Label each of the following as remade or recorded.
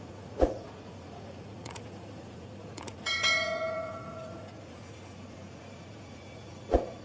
remade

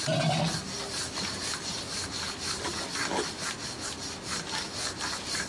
recorded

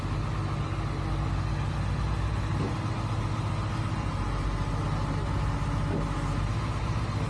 recorded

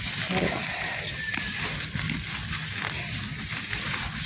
recorded